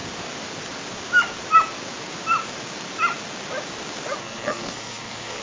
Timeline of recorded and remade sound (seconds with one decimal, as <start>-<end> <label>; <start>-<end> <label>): 0.0-4.2 recorded; 4.2-5.4 remade